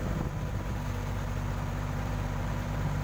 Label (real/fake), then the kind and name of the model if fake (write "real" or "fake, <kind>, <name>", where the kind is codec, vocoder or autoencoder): fake, vocoder, BigVGAN v2